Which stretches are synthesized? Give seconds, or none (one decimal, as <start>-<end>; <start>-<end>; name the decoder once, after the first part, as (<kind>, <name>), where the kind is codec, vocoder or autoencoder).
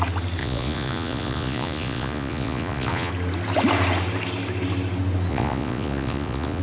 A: 0.4-3.1 (vocoder, Vocos); 5.3-6.6